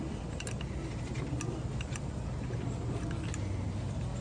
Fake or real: real